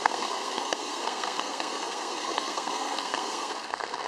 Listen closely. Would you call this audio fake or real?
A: fake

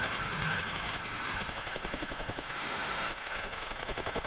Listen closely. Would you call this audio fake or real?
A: fake